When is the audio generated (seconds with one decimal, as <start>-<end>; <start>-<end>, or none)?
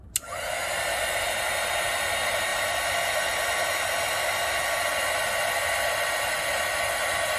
none